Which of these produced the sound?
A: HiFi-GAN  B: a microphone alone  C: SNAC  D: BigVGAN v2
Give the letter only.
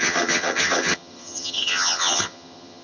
A